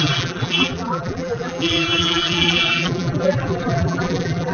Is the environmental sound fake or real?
fake